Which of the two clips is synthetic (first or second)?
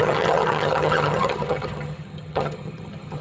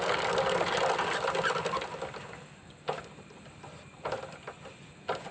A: first